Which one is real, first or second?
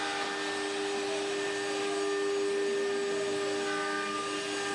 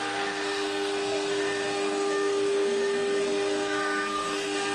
first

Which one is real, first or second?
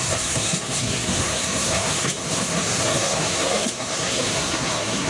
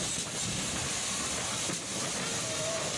second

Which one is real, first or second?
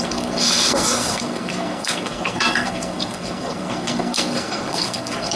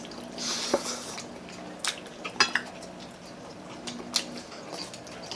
second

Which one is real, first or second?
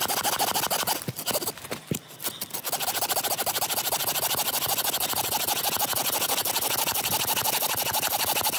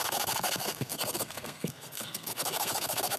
first